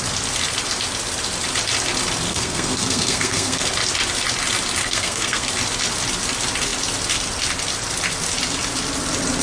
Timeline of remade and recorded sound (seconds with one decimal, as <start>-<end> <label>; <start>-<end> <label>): 0.0-2.3 recorded; 2.3-3.6 remade; 3.6-4.8 recorded; 4.8-5.5 remade; 5.5-9.4 recorded

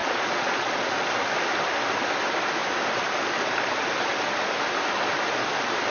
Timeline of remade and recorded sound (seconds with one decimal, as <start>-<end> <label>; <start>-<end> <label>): 0.0-0.7 remade; 0.7-5.9 recorded